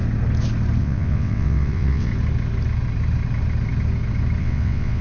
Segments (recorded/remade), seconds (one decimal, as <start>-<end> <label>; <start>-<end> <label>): 0.0-0.8 recorded; 0.8-2.1 remade; 2.1-4.4 recorded; 4.4-5.0 remade